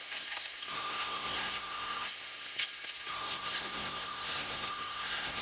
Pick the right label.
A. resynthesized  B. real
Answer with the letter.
A